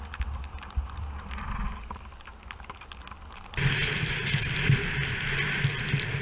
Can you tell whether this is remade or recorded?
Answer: recorded